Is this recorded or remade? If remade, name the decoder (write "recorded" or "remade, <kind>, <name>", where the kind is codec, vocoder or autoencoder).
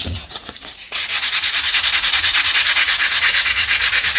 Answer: remade, vocoder, Vocos